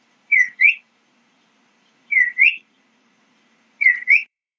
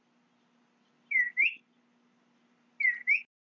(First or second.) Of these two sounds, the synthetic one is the first